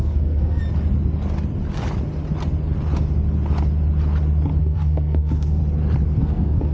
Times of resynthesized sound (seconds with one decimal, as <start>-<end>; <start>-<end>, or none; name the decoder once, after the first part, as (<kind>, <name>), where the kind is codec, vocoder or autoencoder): 0.0-0.6 (codec, SNAC); 4.6-5.6; 6.2-6.7